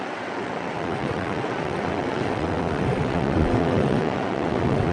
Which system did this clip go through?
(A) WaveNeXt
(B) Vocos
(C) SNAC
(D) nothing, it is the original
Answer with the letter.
A